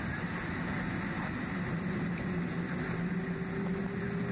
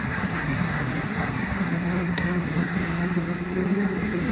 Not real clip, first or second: second